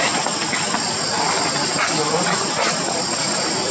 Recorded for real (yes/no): yes